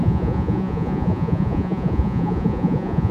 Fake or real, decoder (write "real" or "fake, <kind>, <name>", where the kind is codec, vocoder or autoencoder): fake, vocoder, Vocos